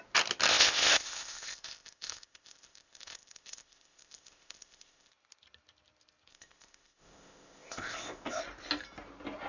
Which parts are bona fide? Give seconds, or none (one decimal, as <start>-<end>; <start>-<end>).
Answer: 0.0-0.5; 5.1-6.3; 8.4-9.5

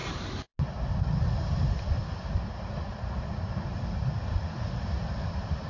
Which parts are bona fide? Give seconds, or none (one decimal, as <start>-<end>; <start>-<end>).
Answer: 0.0-5.7

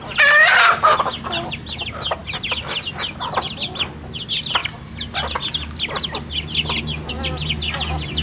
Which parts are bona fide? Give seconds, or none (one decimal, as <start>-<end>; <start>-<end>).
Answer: 0.0-8.2

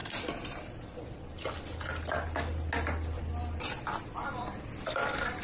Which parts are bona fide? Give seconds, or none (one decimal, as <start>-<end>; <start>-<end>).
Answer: 0.0-5.4

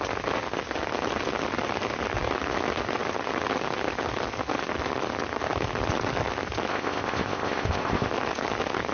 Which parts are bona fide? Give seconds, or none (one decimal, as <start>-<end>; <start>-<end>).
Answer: 0.0-6.7; 8.1-8.9